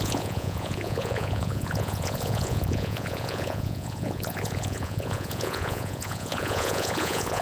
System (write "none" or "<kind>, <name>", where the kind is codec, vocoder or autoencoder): vocoder, Vocos